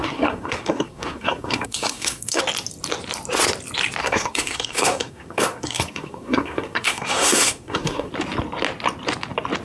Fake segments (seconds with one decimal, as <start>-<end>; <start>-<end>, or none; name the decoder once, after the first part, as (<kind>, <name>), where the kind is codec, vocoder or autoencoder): 0.0-2.4 (codec, SNAC); 4.0-8.1